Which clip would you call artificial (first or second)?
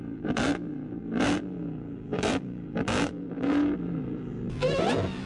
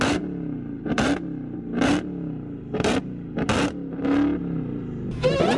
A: first